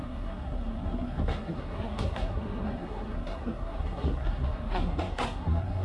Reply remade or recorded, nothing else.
remade